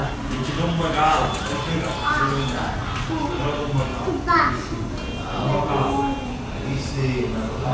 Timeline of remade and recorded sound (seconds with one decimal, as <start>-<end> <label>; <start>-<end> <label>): 0.0-7.7 recorded